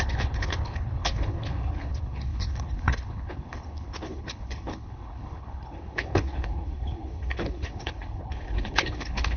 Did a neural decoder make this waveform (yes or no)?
yes